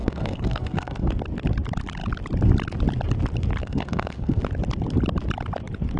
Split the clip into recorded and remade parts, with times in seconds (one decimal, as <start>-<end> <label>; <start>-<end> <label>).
0.0-1.1 remade; 1.1-3.6 recorded; 3.6-4.4 remade; 4.4-6.0 recorded